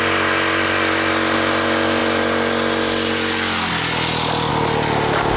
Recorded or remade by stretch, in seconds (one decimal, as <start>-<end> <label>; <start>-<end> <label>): 0.0-5.4 recorded